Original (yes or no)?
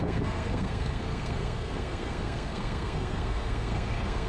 no